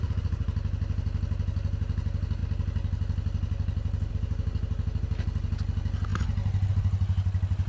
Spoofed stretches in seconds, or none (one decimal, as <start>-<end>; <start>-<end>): none